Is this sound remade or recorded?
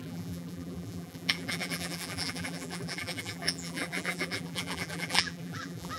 remade